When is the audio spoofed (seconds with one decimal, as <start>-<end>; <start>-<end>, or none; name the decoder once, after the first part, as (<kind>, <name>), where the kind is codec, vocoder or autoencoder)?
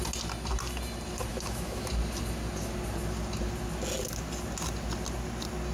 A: 1.3-1.9 (autoencoder, DAC-VAE)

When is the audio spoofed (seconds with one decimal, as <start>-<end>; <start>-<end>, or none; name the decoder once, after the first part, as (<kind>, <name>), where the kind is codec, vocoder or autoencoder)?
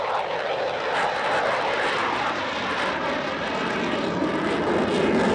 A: none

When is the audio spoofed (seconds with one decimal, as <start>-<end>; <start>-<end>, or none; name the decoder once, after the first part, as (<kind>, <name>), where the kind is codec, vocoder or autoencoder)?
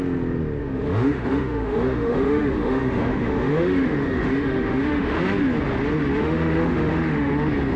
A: 0.6-5.2 (autoencoder, DAC-VAE); 6.2-7.3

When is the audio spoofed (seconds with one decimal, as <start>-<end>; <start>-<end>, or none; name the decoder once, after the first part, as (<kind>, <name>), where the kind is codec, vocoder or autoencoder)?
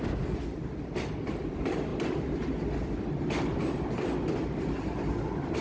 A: none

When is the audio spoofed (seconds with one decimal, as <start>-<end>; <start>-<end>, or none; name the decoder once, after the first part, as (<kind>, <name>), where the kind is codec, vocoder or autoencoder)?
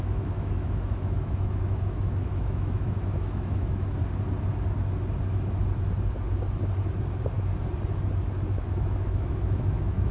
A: 0.0-4.0 (autoencoder, DAC-VAE); 8.6-10.1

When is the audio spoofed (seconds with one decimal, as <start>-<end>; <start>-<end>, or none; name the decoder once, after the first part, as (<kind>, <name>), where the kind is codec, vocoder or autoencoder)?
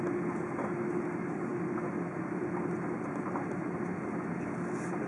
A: none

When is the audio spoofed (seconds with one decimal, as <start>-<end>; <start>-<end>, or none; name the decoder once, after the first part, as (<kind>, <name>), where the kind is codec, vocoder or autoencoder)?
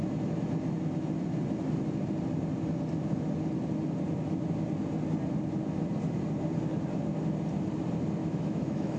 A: 8.2-9.0 (autoencoder, DAC-VAE)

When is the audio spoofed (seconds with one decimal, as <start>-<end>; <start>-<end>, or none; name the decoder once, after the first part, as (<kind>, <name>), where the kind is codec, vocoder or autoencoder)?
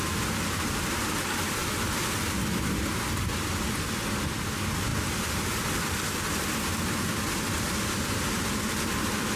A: none